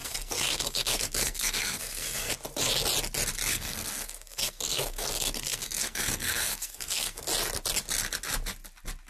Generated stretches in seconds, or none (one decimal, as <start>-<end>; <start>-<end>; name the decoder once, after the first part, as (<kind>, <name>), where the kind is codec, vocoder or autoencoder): 0.0-2.3 (codec, SNAC); 3.5-7.2